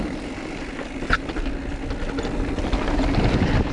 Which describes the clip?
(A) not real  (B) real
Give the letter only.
B